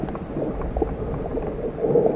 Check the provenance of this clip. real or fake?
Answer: real